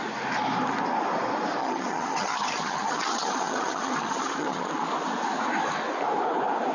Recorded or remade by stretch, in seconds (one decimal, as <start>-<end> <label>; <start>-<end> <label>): 0.0-1.6 recorded; 1.6-4.7 remade; 4.7-6.7 recorded